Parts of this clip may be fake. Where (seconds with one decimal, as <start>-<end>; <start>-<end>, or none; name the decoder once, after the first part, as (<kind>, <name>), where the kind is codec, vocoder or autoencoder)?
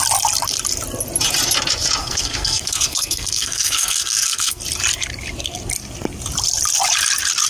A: 2.0-4.6 (codec, SNAC)